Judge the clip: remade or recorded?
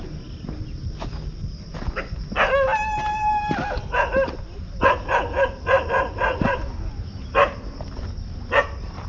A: recorded